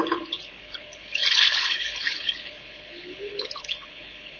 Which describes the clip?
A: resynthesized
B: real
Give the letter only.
A